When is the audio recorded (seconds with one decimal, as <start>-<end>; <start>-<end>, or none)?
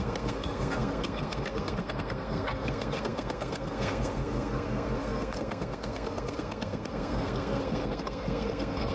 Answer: none